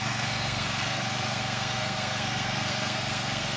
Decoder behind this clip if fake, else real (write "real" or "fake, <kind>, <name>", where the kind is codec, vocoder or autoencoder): fake, codec, SNAC